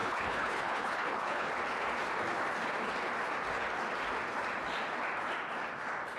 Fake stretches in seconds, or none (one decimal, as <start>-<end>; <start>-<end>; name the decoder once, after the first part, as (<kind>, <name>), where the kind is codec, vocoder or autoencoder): 0.0-1.5 (codec, HILCodec)